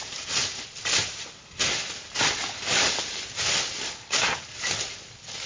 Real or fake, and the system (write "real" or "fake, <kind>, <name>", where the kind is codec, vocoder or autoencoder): real